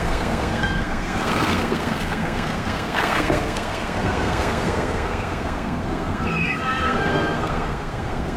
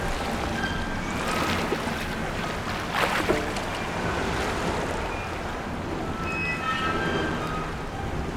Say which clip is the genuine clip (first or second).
second